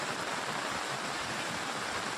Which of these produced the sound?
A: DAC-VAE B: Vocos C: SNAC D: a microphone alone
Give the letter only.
D